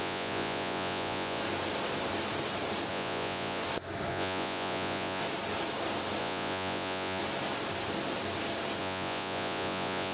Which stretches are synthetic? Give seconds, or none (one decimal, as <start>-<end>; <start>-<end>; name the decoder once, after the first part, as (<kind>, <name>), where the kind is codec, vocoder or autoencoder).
0.0-1.4 (vocoder, Vocos); 2.9-3.6; 4.1-5.2; 6.2-7.2; 8.8-10.1